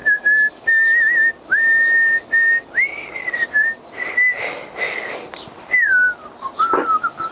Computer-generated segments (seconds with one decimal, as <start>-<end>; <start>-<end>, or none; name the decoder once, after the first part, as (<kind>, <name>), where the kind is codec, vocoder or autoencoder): 0.0-0.7 (autoencoder, DAC-VAE)